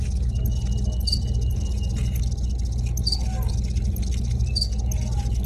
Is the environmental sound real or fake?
real